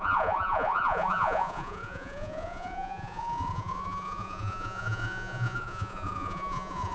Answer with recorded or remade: remade